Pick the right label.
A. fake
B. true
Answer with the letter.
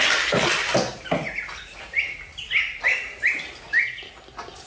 B